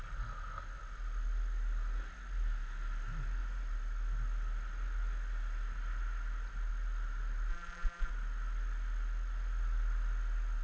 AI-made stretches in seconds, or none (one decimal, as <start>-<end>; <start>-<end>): 7.5-8.1